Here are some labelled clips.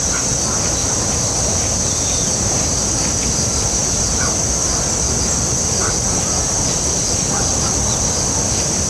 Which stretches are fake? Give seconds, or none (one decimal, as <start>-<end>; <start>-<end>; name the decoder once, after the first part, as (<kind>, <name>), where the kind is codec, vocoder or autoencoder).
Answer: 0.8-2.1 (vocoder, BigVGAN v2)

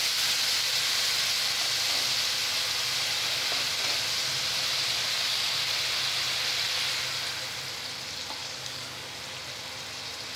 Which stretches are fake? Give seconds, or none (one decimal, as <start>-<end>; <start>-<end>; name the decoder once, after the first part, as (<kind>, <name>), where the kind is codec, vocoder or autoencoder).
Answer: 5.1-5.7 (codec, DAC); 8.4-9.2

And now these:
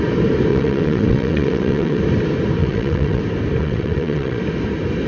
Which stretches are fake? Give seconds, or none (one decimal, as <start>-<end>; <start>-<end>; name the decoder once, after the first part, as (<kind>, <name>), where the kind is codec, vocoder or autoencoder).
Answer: 0.5-2.0 (vocoder, WaveNeXt); 2.6-3.2; 3.6-4.4

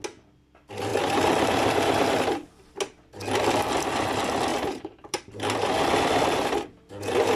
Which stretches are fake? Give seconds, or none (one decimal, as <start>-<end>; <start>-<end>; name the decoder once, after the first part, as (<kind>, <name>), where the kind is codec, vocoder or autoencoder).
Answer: 4.5-5.2 (vocoder, BigVGAN v2)

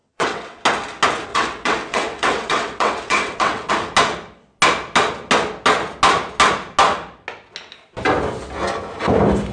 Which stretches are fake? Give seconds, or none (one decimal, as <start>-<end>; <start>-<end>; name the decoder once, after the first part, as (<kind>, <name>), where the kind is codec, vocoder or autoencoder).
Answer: 0.0-0.6 (vocoder, WaveNeXt); 1.3-3.7

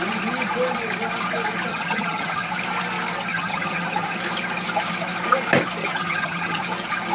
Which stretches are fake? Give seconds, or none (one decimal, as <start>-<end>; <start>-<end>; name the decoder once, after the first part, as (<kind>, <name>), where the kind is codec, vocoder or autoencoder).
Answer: 1.7-2.5 (vocoder, HiFi-GAN); 3.3-4.2; 5.8-6.6